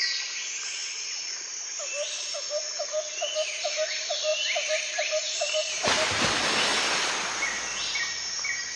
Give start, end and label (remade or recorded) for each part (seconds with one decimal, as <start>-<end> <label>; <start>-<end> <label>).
0.0-4.3 recorded; 4.3-6.2 remade; 6.2-8.8 recorded